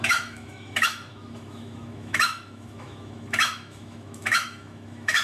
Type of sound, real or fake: fake